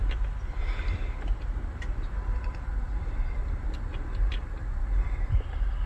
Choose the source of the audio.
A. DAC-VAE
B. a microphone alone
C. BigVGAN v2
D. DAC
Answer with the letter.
C